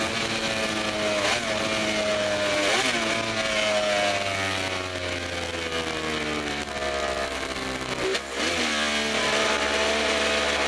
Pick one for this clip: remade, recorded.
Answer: recorded